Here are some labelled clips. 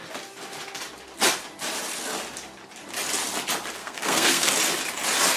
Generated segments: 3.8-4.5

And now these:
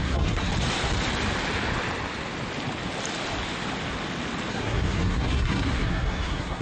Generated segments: 0.0-0.5; 4.5-6.6